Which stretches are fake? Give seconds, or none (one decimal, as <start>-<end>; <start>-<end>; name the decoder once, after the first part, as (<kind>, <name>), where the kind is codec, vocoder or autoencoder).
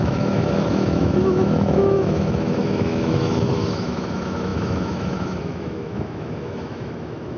0.0-7.4 (autoencoder, DAC-VAE)